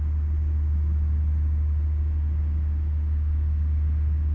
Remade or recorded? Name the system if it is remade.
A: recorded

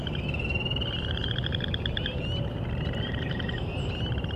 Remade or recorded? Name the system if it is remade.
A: remade, vocoder, BigVGAN v2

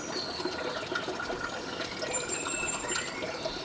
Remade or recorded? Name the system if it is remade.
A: recorded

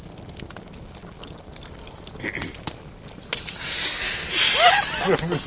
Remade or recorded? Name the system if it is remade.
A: recorded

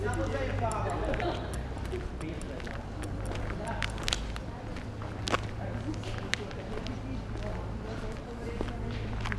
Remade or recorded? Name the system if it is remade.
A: recorded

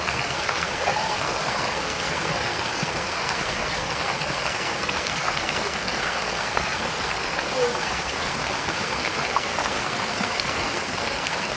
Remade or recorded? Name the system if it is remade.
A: remade, codec, SNAC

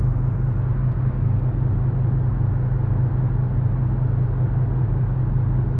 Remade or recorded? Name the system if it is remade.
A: recorded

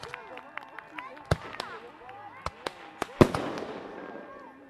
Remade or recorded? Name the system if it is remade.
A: recorded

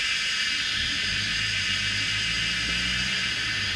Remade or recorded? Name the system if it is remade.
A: recorded